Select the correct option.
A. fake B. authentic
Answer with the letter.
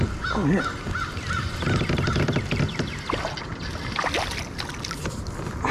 B